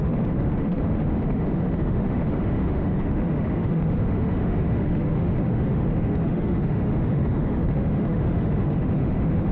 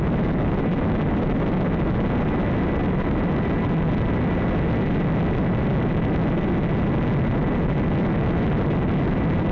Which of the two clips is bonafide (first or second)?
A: second